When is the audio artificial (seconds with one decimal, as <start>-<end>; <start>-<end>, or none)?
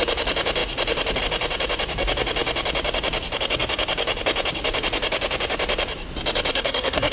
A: 6.5-7.1